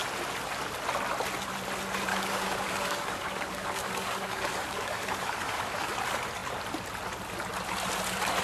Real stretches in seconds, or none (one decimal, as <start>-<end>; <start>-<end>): 0.0-2.1; 5.9-8.4